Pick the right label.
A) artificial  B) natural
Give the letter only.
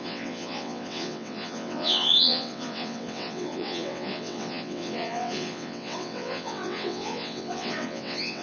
A